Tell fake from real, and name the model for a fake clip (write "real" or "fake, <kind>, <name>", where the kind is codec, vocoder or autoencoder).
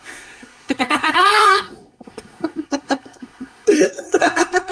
fake, codec, SNAC